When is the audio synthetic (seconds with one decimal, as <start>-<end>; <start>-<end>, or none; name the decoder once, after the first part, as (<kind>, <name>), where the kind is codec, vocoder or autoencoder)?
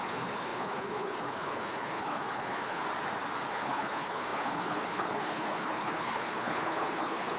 0.0-2.8 (codec, HILCodec); 3.5-7.4